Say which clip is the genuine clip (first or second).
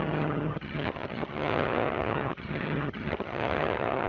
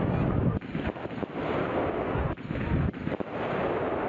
second